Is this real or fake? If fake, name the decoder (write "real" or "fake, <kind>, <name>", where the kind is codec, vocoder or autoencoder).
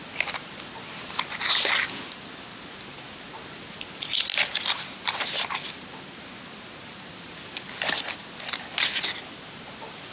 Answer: real